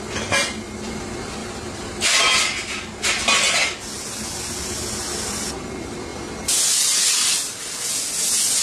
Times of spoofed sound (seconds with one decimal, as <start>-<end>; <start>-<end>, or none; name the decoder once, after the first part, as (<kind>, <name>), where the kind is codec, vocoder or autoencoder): 1.4-2.0 (vocoder, BigVGAN v2)